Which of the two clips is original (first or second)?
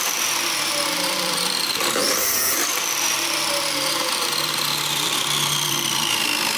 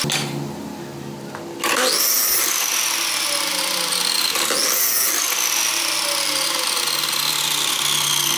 second